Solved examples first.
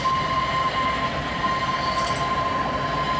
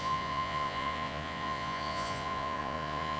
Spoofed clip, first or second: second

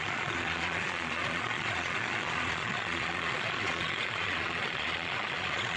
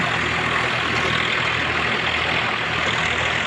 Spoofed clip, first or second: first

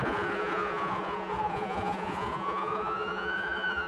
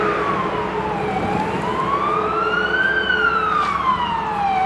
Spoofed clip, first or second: first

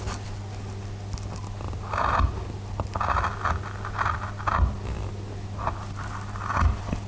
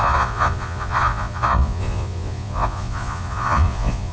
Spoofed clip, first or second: second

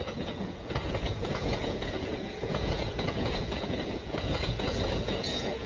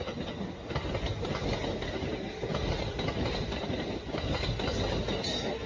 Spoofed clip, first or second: first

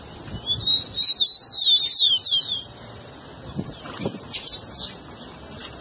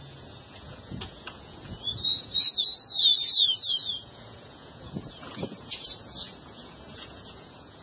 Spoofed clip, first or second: second